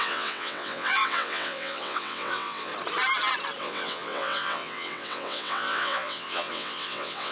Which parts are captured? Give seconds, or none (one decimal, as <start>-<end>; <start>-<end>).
2.7-3.6